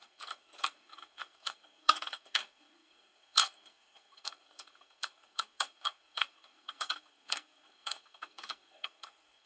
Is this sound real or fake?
fake